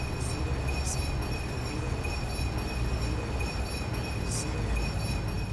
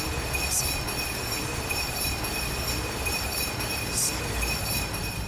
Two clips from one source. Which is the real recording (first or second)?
first